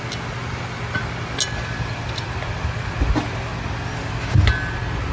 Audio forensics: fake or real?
real